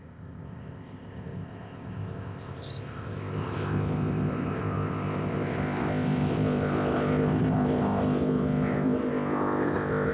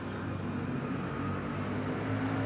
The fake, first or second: first